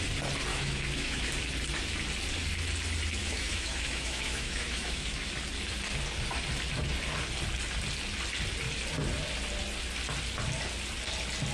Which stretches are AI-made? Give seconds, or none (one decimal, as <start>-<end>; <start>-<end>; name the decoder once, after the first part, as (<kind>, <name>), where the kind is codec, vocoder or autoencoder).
0.5-1.3 (autoencoder, DAC-VAE); 3.2-5.3